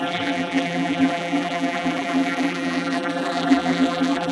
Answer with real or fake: fake